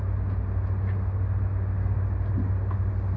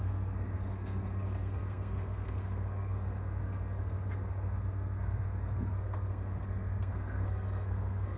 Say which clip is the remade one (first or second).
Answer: second